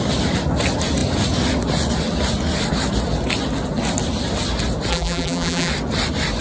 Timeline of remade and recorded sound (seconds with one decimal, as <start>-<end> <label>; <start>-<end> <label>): 0.0-4.9 recorded; 4.9-5.7 remade; 5.7-6.4 recorded